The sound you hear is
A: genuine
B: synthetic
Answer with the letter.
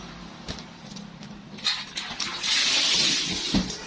A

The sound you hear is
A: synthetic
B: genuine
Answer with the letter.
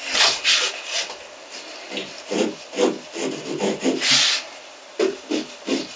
B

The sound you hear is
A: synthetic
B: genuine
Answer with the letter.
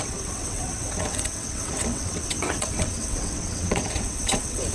A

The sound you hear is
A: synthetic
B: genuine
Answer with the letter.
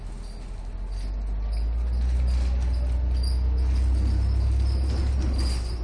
B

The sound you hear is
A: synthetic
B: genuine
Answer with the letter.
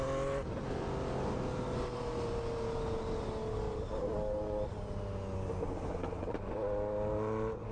B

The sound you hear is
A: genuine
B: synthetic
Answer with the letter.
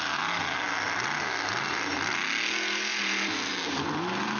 A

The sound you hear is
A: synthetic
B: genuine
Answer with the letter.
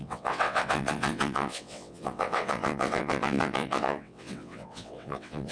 A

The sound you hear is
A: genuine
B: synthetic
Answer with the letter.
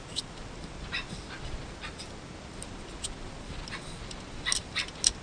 A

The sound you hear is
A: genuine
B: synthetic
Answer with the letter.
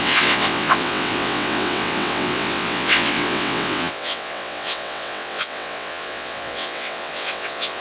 B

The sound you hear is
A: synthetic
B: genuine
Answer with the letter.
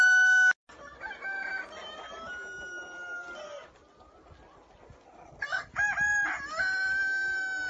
B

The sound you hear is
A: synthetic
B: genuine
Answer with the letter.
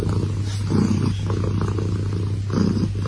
B